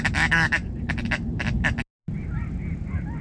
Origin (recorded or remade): recorded